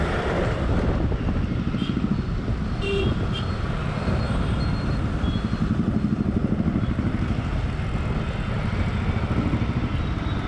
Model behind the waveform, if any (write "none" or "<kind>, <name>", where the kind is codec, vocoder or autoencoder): none